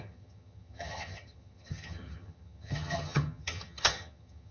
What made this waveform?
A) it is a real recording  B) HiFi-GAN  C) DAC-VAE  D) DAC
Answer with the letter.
B